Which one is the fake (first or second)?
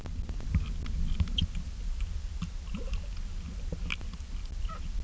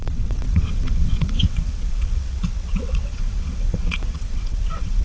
second